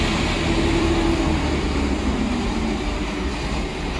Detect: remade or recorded recorded